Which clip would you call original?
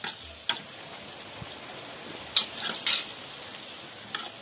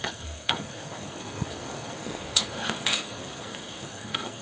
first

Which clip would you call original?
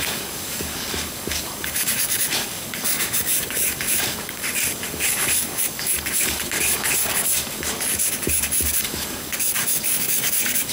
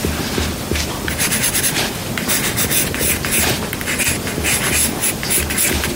second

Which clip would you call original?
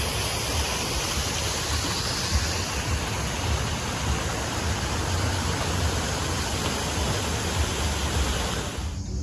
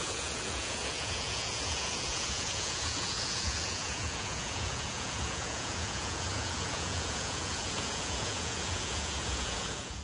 first